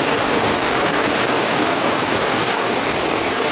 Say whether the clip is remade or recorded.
remade